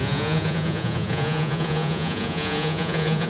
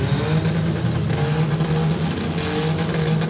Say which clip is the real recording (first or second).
second